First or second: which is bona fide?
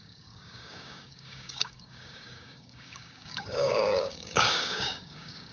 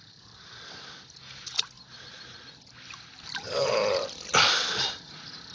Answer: second